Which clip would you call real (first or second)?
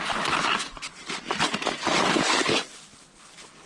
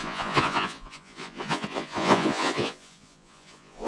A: first